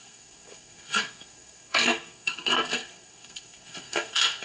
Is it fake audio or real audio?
fake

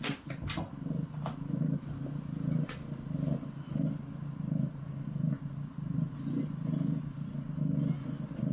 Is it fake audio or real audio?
real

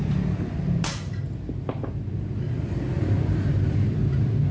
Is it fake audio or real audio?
real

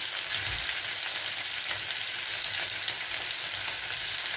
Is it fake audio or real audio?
real